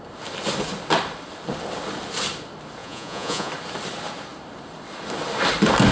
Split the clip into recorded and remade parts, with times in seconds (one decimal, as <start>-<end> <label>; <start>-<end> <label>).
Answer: 0.0-2.8 recorded; 2.8-3.5 remade; 3.5-5.9 recorded